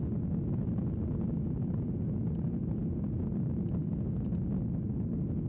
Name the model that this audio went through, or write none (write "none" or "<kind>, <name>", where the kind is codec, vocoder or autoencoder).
none